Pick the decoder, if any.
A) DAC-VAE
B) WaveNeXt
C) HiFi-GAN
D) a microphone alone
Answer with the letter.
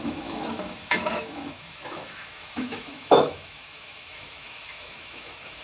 A